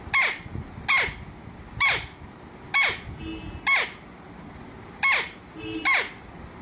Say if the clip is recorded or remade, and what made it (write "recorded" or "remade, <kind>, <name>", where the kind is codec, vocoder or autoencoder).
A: recorded